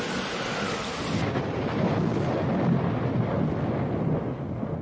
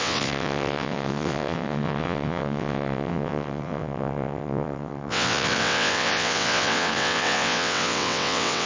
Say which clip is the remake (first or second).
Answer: second